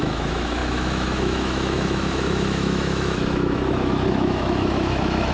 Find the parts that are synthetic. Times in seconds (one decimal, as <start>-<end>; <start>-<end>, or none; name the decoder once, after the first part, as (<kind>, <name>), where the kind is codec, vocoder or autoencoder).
0.0-5.3 (autoencoder, DAC-VAE)